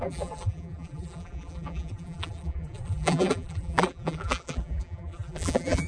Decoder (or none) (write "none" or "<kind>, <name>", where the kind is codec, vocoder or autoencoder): vocoder, BigVGAN v2